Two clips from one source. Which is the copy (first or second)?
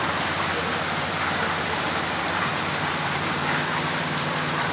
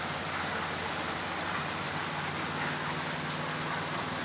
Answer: first